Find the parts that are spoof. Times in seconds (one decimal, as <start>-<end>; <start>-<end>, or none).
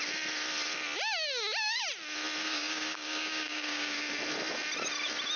2.4-4.1